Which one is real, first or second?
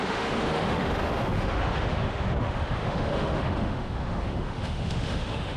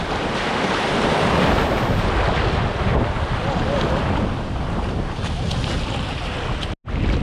second